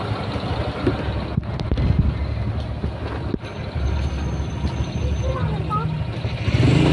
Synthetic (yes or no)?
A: no